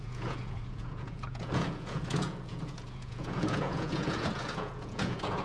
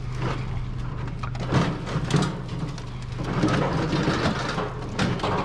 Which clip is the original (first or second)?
second